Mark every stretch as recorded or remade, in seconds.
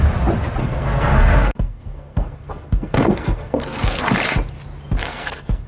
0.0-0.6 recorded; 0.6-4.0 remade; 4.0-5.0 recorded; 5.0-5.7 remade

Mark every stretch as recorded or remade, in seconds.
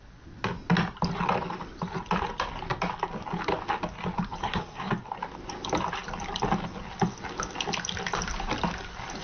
0.0-4.4 recorded; 4.4-4.9 remade; 4.9-9.2 recorded